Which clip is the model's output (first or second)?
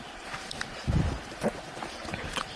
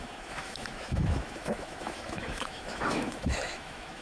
second